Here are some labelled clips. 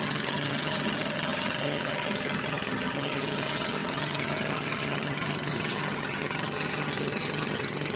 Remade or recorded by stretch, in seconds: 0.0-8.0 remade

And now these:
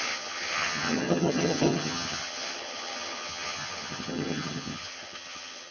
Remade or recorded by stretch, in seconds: 0.0-5.7 remade

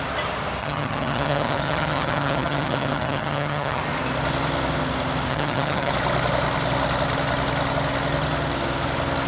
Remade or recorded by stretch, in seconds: 0.0-0.6 recorded; 0.6-3.8 remade; 3.8-5.3 recorded; 5.3-5.9 remade; 5.9-9.3 recorded

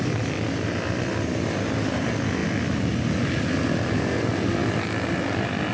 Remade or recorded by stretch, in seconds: 0.0-5.7 recorded

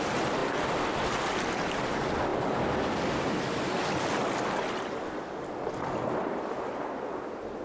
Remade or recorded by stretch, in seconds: 0.0-7.6 recorded

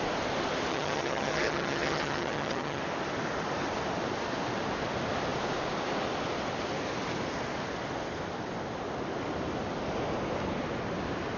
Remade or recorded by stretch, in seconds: 0.0-0.7 recorded; 0.7-2.8 remade; 2.8-11.4 recorded